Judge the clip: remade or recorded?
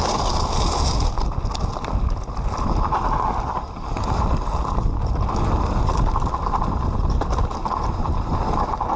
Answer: recorded